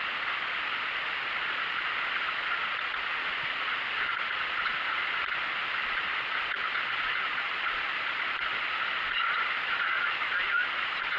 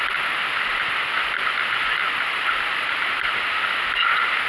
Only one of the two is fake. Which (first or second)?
first